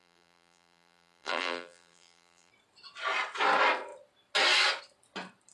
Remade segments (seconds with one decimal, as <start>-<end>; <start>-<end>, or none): 0.0-2.5